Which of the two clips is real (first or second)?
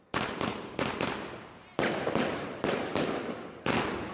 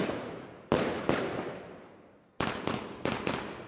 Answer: second